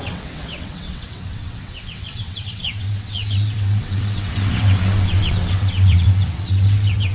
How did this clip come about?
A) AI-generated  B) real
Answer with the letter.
A